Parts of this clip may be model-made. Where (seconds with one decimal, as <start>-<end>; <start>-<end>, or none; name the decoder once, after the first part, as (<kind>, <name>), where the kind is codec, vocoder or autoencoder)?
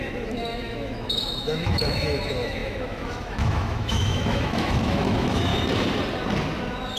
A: 0.0-5.5 (autoencoder, DAC-VAE)